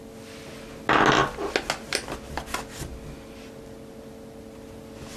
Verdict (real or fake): real